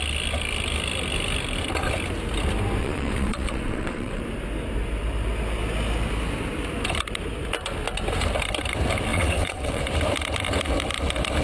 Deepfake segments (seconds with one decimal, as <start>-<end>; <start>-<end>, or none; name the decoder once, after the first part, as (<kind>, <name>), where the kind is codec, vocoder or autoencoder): 2.8-4.2 (vocoder, WaveNeXt); 9.1-9.8